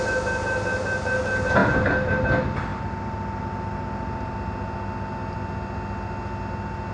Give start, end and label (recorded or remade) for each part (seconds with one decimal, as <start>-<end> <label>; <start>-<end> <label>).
0.0-6.9 recorded